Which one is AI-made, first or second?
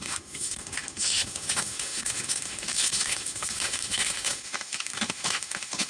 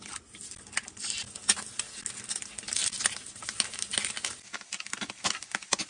first